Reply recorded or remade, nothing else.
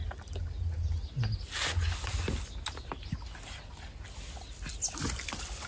recorded